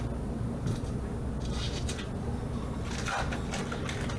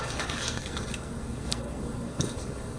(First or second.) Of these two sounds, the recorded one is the first